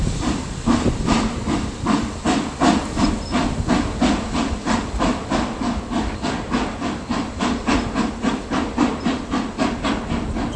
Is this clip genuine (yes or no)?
yes